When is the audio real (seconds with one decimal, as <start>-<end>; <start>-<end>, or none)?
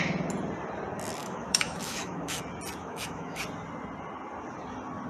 0.0-1.2; 2.4-2.8; 3.4-5.1